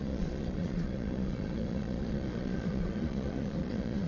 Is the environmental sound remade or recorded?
remade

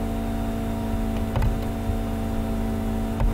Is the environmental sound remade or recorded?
recorded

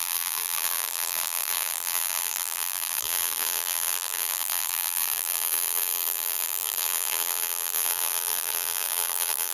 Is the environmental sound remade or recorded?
remade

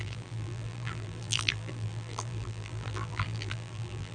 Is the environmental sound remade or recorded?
remade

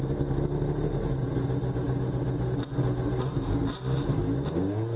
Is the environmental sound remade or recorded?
recorded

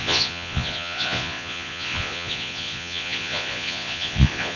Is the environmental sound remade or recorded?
remade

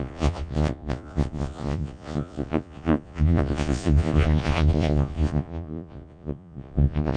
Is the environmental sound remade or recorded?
remade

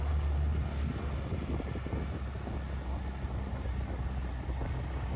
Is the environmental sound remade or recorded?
recorded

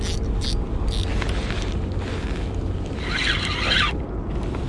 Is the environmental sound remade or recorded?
recorded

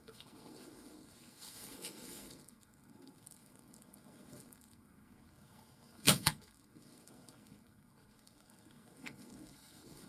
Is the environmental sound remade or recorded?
remade